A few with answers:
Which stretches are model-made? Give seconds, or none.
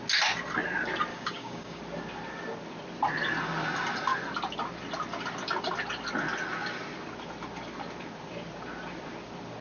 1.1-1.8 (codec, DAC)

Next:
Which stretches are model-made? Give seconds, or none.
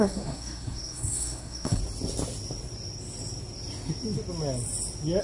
0.0-1.8 (codec, SNAC)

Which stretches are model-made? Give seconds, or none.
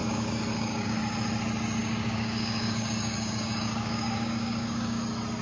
0.0-1.0 (codec, DAC); 1.8-5.0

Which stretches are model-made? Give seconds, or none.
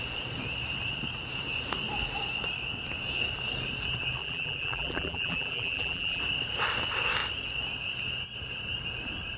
4.2-6.2 (vocoder, BigVGAN v2)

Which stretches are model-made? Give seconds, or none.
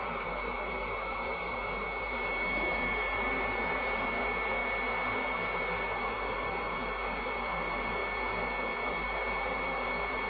0.0-4.6 (vocoder, BigVGAN v2); 5.6-8.0; 8.9-10.3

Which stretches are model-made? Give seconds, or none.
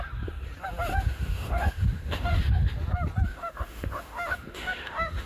0.9-2.7 (autoencoder, DAC-VAE); 3.3-5.3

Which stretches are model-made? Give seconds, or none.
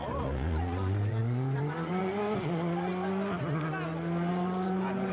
0.0-2.9 (vocoder, Vocos); 4.3-5.1